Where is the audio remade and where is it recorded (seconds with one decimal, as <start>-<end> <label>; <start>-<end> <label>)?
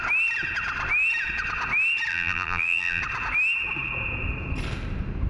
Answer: 0.0-2.1 recorded; 2.1-3.0 remade; 3.0-5.3 recorded